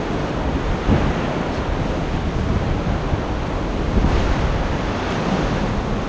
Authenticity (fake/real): real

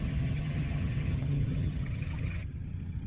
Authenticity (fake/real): fake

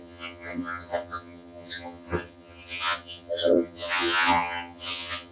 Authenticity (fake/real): fake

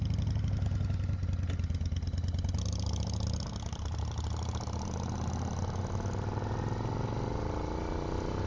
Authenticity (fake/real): real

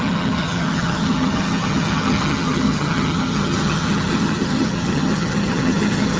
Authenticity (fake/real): fake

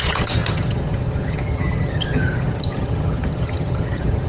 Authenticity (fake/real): fake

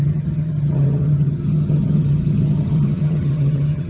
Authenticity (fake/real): fake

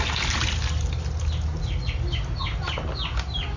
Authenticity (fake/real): real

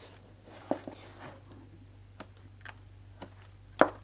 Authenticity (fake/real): real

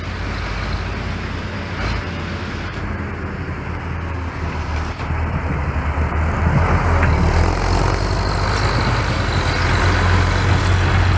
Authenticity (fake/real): real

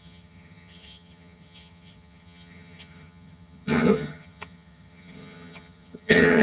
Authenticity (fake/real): fake